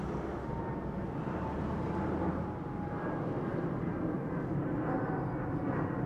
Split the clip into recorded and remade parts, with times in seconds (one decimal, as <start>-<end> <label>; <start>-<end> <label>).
0.0-6.1 recorded